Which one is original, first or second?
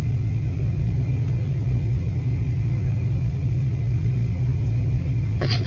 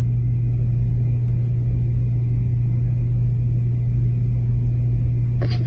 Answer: second